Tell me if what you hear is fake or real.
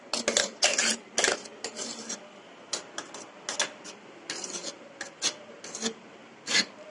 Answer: real